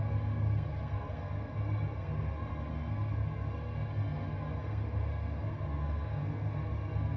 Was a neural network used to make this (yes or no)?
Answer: yes